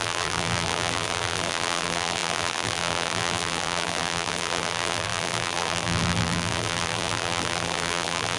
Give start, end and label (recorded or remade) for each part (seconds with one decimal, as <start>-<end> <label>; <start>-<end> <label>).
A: 0.0-8.4 remade